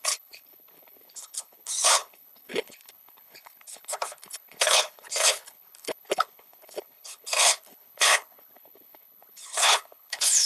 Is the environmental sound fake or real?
fake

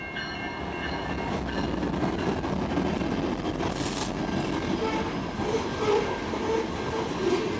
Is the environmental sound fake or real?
real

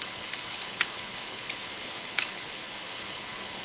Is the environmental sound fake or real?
fake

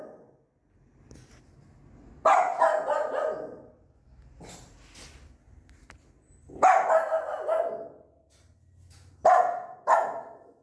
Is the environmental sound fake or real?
real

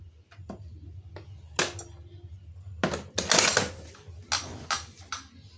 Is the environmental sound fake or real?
real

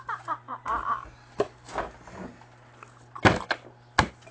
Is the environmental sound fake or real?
real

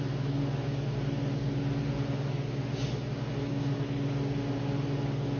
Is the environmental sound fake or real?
real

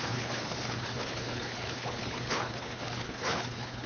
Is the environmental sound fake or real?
fake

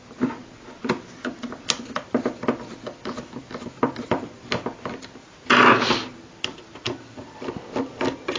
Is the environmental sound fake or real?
real